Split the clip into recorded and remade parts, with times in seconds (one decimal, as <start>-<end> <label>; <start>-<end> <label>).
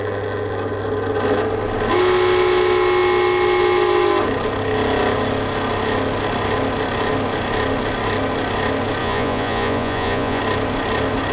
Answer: 0.0-9.0 recorded; 9.0-10.4 remade; 10.4-11.3 recorded